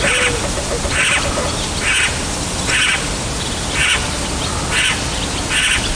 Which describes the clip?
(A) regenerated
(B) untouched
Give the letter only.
B